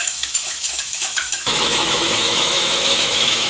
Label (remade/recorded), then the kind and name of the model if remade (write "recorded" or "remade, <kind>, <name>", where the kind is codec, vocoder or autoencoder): remade, autoencoder, DAC-VAE